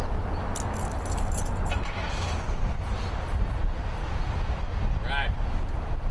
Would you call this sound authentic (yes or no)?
yes